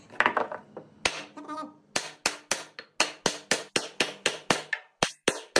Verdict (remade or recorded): recorded